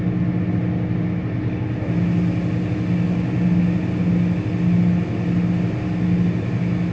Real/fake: real